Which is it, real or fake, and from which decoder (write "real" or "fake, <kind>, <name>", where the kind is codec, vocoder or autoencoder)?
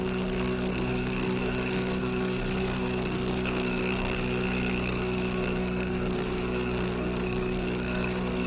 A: fake, codec, SNAC